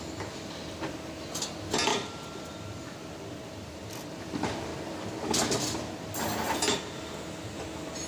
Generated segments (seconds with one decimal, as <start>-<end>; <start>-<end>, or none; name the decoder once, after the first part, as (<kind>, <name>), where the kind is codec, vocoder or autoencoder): 1.9-4.2 (vocoder, BigVGAN v2)